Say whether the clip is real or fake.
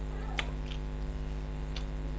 real